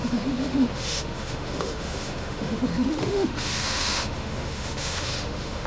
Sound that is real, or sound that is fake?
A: fake